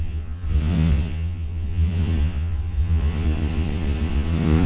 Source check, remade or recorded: remade